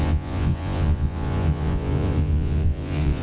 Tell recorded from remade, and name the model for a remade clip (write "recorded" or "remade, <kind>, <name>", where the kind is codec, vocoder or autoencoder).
remade, vocoder, Vocos